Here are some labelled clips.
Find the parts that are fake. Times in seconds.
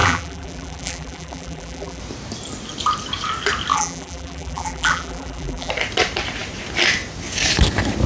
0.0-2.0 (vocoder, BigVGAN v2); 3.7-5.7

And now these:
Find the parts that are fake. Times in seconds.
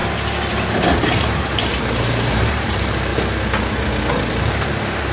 0.5-3.1 (vocoder, BigVGAN v2); 4.3-5.1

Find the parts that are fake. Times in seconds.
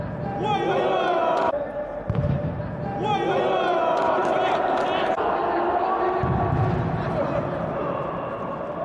none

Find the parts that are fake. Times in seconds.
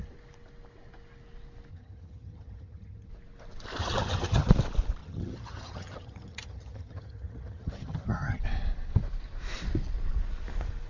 1.7-3.1 (vocoder, HiFi-GAN); 3.8-4.5; 5.0-8.4